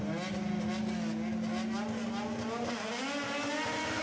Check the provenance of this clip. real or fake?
real